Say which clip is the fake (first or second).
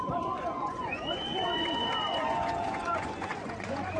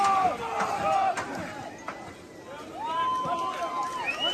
first